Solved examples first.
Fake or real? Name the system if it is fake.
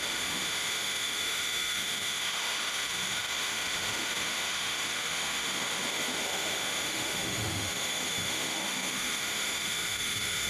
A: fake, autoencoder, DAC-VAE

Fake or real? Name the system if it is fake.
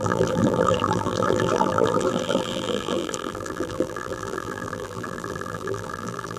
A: fake, vocoder, BigVGAN v2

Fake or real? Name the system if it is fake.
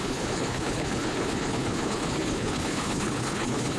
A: fake, codec, HILCodec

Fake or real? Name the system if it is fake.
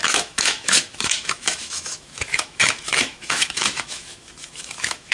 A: fake, autoencoder, DAC-VAE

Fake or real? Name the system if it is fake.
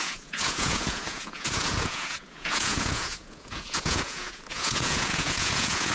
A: fake, vocoder, Vocos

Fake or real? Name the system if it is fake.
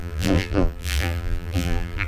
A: fake, vocoder, BigVGAN v2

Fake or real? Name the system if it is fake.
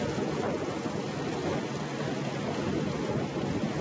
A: real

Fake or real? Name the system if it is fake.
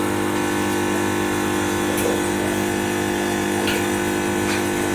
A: real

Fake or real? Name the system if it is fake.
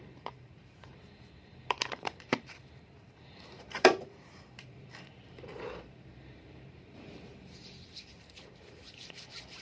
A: fake, vocoder, BigVGAN v2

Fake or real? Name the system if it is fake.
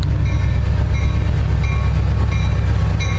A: real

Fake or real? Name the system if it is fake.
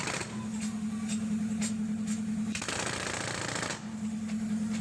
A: real